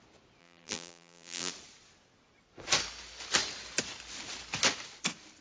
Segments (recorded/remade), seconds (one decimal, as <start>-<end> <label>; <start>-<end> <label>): 0.0-0.4 recorded; 0.4-1.5 remade; 1.5-5.4 recorded